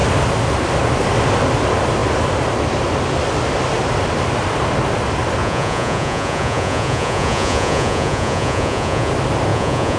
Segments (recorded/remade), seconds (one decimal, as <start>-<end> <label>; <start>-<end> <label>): 0.0-5.4 recorded; 5.4-9.1 remade; 9.1-9.5 recorded; 9.5-10.0 remade